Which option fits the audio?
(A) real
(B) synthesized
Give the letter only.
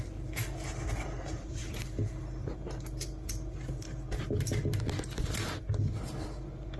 A